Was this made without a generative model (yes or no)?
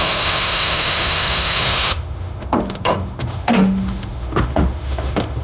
no